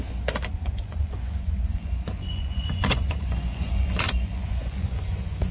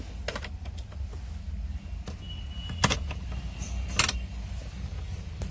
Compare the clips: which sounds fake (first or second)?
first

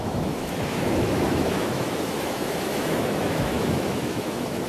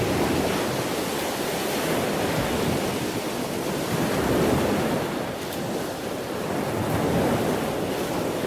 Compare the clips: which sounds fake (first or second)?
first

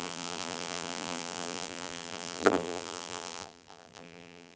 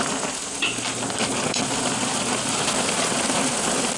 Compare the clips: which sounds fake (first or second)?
first